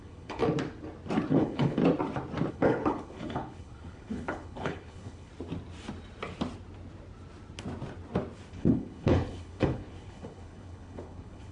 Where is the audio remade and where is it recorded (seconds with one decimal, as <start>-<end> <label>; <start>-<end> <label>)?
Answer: 0.0-0.4 remade; 0.4-1.3 recorded; 1.3-1.8 remade; 1.8-2.5 recorded; 2.5-5.3 remade; 5.3-8.5 recorded; 8.5-11.5 remade